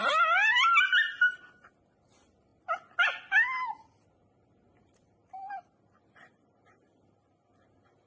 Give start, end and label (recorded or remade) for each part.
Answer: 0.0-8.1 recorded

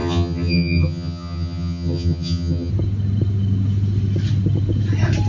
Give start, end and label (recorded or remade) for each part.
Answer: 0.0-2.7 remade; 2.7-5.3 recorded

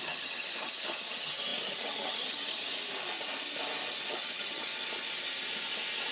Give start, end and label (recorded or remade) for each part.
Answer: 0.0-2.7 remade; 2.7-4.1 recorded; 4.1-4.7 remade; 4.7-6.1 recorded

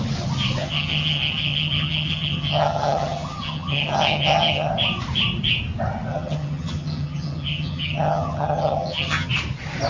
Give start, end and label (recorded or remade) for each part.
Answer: 0.0-0.6 recorded; 0.6-4.7 remade; 4.7-6.1 recorded; 6.1-9.3 remade; 9.3-9.9 recorded